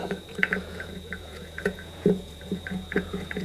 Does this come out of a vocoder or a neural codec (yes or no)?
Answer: yes